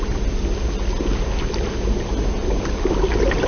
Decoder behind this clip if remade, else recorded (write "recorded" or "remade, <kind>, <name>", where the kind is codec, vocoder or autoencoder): recorded